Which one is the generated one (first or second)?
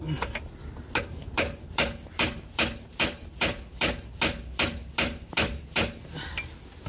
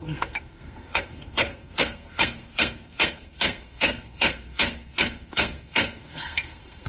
second